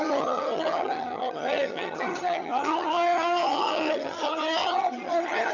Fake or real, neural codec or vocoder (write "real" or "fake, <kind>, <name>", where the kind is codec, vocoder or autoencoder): fake, vocoder, HiFi-GAN